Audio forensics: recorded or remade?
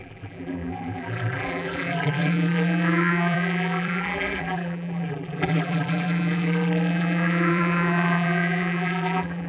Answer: remade